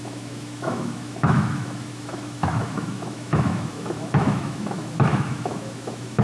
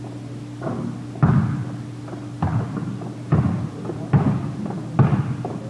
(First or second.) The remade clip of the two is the first